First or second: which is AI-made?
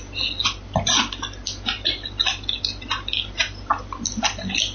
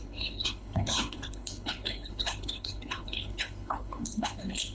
second